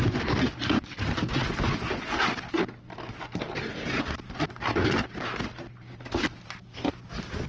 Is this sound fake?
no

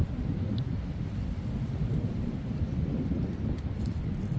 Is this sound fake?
no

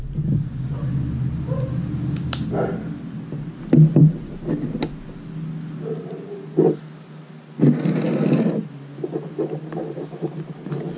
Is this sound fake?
no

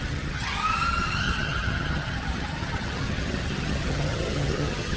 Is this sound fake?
yes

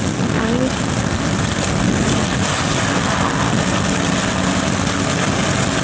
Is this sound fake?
no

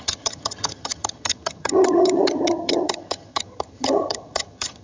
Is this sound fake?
yes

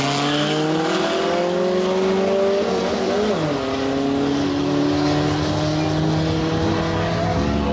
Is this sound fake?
no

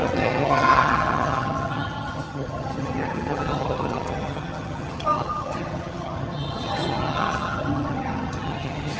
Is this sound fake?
yes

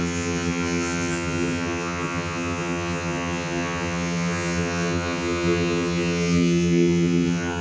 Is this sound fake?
yes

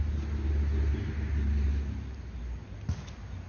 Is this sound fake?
no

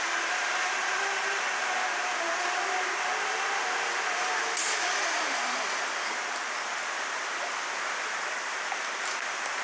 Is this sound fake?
no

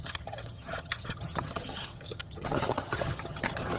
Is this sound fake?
yes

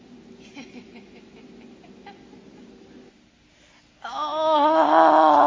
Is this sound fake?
no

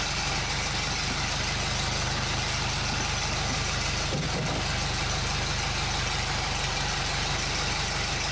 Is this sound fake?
no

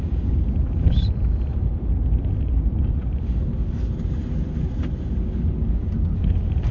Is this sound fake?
no